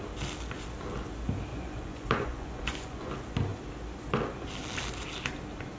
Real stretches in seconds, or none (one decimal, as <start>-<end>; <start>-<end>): 0.0-1.5; 3.1-5.8